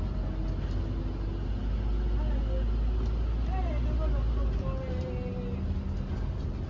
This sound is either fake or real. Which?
real